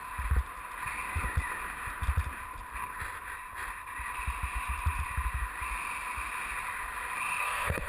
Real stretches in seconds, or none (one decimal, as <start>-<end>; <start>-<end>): 0.0-7.4